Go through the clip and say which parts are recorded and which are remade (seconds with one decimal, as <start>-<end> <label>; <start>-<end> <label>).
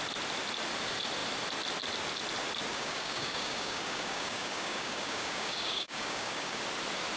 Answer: 0.0-2.7 recorded; 2.7-6.6 remade; 6.6-7.2 recorded